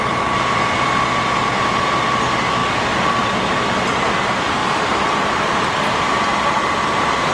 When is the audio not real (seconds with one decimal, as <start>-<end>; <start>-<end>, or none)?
2.6-3.6; 6.1-7.3